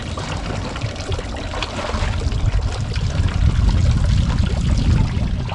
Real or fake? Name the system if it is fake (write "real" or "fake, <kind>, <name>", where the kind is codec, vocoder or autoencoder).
real